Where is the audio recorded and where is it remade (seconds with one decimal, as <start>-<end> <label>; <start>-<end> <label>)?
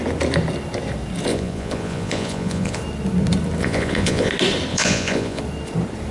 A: 0.0-1.3 recorded; 1.3-2.8 remade; 2.8-3.6 recorded; 3.6-4.3 remade; 4.3-4.7 recorded; 4.7-5.4 remade; 5.4-6.1 recorded